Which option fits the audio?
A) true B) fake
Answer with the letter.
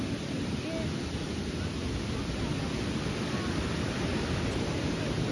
A